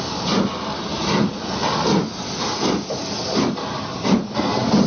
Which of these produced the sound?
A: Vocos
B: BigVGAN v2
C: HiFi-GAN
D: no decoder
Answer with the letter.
D